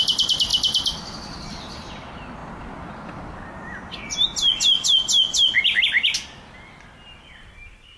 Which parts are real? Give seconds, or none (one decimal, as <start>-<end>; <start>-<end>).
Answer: 0.0-8.0

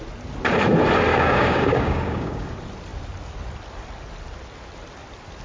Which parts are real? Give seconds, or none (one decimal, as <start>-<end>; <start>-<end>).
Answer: 0.0-1.1; 2.5-5.4

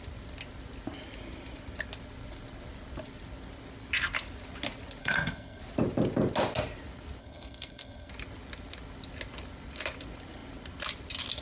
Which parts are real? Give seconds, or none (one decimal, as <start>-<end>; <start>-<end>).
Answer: 0.0-5.0; 5.6-7.2; 8.1-11.4

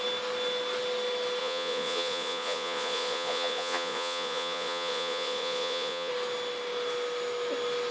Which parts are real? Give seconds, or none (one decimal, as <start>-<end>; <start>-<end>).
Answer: 0.0-1.4; 6.1-7.9

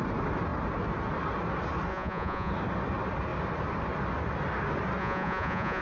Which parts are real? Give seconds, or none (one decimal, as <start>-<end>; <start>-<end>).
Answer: 0.0-1.9; 2.5-5.0